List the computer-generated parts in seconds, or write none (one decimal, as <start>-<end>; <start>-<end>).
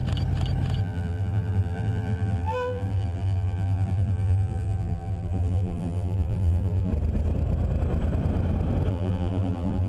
0.8-6.9; 8.9-9.9